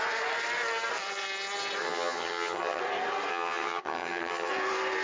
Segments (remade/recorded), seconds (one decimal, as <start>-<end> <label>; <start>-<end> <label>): 0.0-1.8 recorded; 1.8-2.8 remade; 2.8-3.3 recorded; 3.3-4.5 remade; 4.5-5.0 recorded